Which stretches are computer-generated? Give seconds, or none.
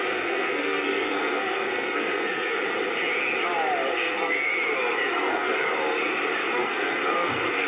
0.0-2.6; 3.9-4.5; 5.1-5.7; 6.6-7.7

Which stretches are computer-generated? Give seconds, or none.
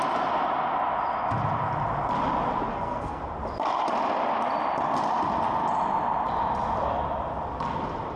2.7-3.2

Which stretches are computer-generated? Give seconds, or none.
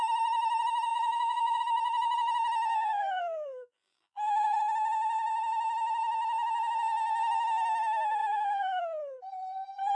0.9-1.6; 2.7-4.6; 8.2-8.8